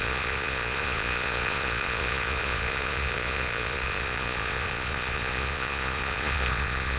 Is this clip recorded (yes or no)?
no